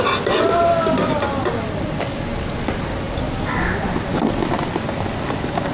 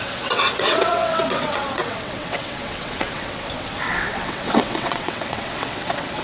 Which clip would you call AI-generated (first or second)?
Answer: second